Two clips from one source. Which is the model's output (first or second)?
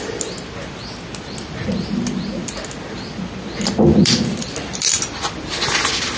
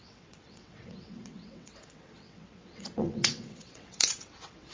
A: second